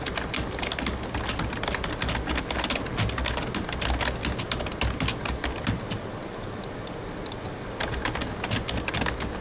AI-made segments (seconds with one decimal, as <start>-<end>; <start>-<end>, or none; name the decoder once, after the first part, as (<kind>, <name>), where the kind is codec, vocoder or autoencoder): none